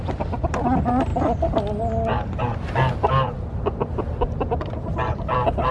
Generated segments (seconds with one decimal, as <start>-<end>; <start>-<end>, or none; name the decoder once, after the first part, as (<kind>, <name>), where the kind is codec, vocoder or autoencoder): none